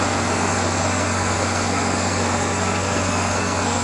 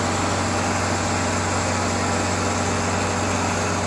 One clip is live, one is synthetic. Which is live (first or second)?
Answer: second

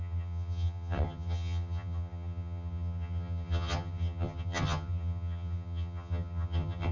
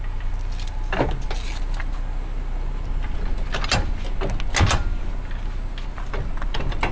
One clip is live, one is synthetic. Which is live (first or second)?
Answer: second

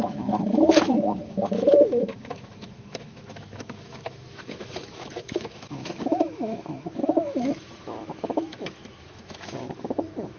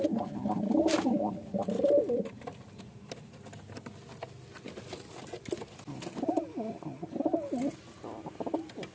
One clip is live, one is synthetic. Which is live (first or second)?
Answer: second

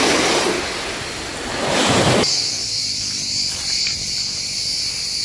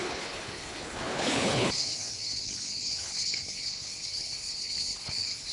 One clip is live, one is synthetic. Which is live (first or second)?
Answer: first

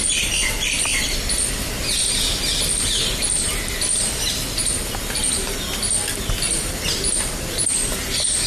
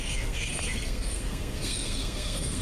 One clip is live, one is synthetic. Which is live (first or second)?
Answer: first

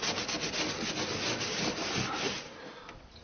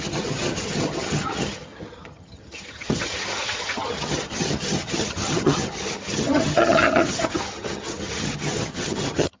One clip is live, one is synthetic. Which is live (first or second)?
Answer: first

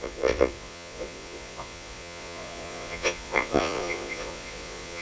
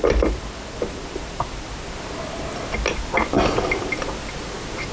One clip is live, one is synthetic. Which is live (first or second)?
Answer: second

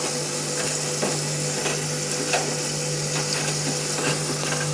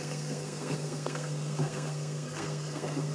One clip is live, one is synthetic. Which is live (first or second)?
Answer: first